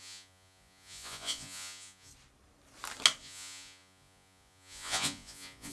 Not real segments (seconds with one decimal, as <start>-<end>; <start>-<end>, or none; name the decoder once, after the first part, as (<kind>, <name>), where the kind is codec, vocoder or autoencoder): 0.0-2.1 (vocoder, Vocos); 3.2-5.7